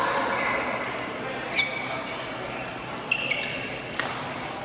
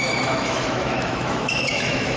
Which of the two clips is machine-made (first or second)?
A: second